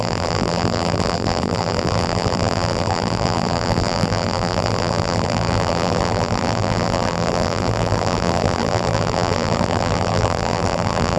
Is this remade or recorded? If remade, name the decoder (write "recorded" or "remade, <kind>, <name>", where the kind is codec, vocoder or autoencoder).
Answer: remade, vocoder, BigVGAN v2